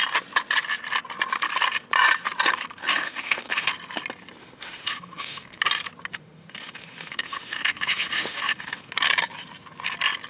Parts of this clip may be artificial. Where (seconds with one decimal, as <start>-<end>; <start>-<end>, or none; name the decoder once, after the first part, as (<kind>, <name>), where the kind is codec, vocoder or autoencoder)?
2.9-3.7 (autoencoder, DAC-VAE); 4.4-5.6; 6.1-8.9